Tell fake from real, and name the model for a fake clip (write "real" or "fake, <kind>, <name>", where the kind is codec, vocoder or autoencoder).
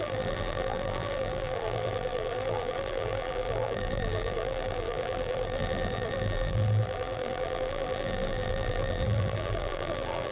fake, vocoder, BigVGAN v2